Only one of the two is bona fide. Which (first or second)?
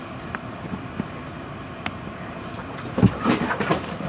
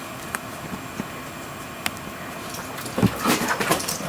second